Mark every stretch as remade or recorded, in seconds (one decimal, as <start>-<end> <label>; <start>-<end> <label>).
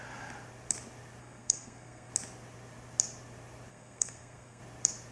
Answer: 0.0-1.2 recorded; 1.2-2.1 remade; 2.1-3.7 recorded; 3.7-4.6 remade; 4.6-5.1 recorded